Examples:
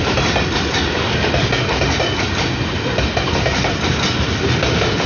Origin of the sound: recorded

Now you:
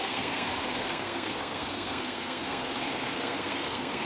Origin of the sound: remade